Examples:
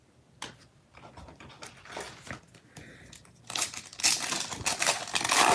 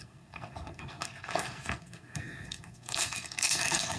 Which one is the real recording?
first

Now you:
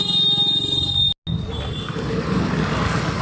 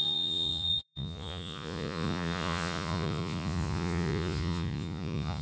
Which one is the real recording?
first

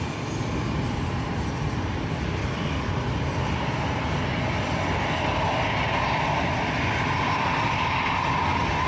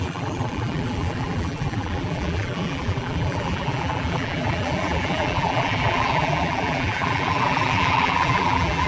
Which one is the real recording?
first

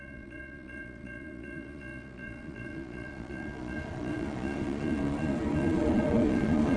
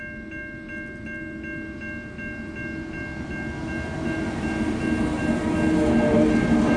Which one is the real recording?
second